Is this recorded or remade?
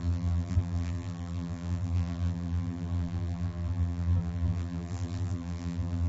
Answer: remade